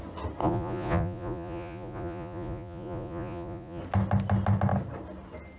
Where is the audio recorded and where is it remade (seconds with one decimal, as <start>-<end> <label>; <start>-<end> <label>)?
0.0-0.4 recorded; 0.4-3.8 remade; 3.8-5.6 recorded